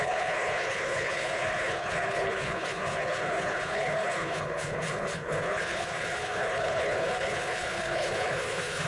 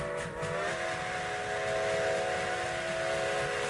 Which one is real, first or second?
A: second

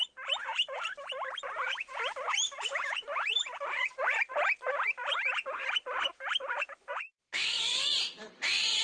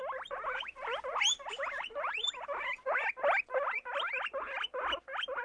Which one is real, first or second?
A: second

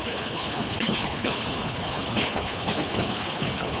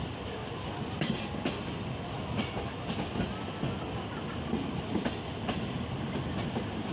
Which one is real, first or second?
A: second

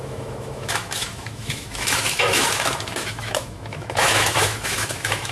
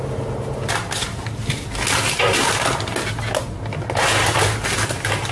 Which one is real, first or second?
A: second